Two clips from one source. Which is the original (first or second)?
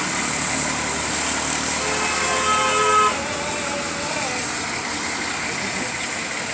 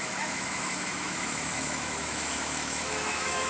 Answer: first